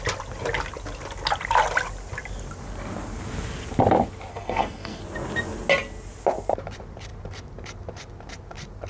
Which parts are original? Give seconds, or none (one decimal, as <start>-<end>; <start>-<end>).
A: 0.0-4.3; 5.0-8.9